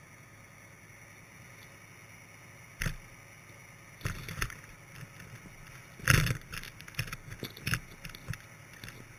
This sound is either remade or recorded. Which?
recorded